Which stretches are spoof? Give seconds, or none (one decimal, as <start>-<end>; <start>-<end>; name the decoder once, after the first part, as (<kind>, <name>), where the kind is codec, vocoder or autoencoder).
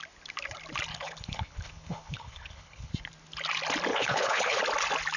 0.9-2.9 (codec, HILCodec); 3.9-4.6